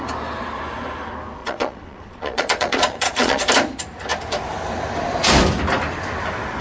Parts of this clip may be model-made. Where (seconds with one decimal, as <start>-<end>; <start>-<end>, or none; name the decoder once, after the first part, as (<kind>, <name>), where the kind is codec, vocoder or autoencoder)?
1.4-3.4 (vocoder, Vocos)